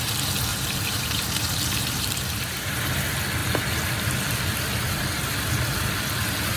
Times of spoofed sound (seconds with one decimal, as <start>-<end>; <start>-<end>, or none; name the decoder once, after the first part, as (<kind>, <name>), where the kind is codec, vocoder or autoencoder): 0.5-3.0 (vocoder, BigVGAN v2)